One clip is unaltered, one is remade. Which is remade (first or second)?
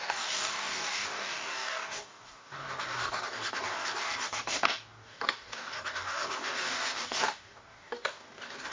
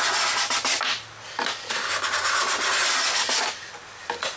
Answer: first